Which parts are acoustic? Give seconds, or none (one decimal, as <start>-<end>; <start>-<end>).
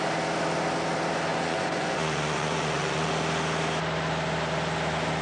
0.0-1.3; 3.1-5.2